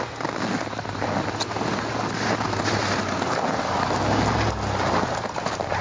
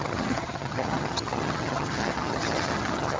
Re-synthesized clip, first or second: second